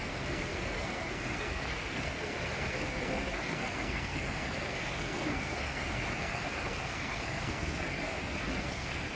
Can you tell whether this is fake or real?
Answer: fake